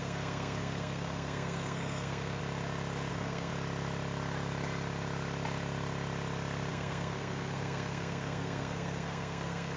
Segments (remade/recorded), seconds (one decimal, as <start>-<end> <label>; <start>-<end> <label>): 0.0-2.4 remade; 2.4-3.1 recorded; 3.1-3.5 remade; 3.5-6.7 recorded; 6.7-9.8 remade